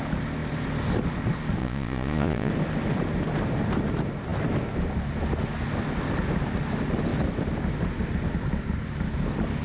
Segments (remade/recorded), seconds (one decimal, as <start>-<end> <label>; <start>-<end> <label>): 0.0-1.6 recorded; 1.6-2.5 remade; 2.5-9.6 recorded